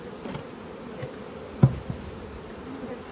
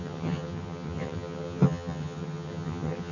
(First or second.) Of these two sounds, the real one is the first